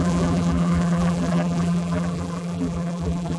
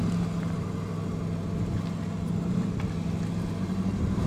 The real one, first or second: second